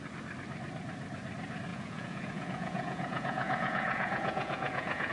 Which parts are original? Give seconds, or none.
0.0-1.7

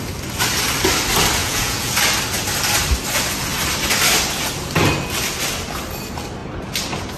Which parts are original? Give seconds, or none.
0.0-1.4; 1.9-7.2